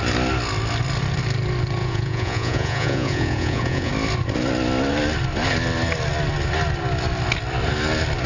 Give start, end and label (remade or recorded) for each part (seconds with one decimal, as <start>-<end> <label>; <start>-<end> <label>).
0.0-1.8 recorded; 1.8-3.9 remade; 3.9-8.3 recorded